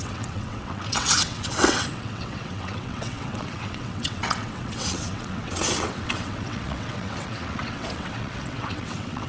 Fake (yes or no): yes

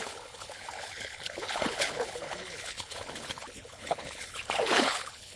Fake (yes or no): yes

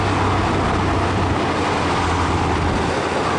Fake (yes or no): no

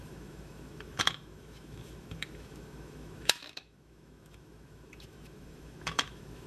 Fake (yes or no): yes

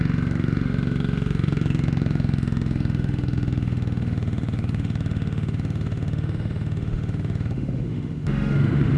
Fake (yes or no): yes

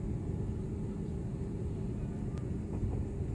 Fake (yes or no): no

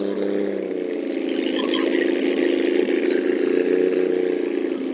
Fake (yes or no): no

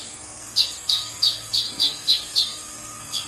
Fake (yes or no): yes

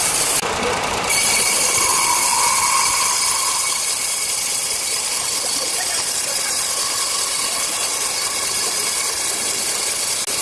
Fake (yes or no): no